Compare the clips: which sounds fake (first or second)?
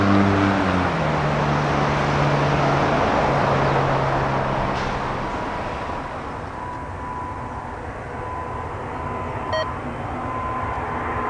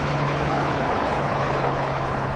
second